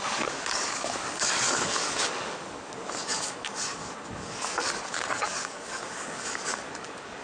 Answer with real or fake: fake